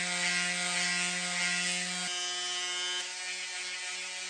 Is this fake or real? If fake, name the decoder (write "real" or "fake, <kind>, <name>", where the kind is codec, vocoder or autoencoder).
real